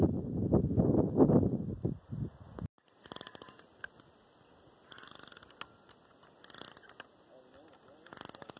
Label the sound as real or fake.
real